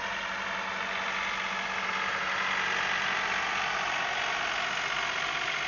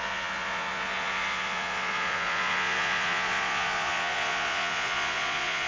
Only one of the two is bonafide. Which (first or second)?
first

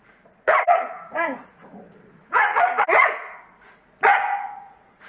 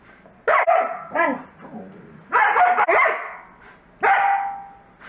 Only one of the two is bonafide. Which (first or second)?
second